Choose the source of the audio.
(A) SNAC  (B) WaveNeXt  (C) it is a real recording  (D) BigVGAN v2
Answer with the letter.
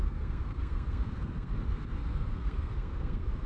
A